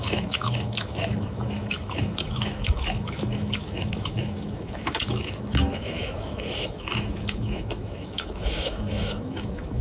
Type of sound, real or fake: fake